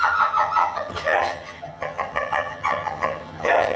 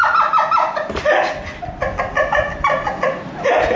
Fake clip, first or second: first